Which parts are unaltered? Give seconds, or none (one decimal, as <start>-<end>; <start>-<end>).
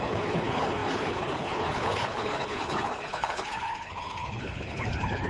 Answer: none